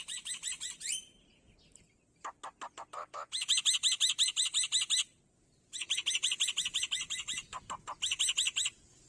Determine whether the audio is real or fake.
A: real